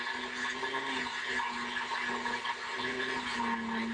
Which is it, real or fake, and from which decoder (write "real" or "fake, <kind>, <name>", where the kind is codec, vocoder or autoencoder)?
real